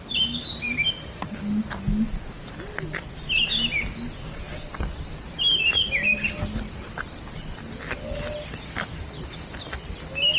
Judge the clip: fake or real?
real